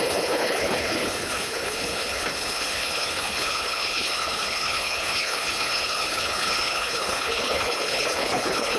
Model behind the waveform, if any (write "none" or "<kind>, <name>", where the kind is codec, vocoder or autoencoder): codec, HILCodec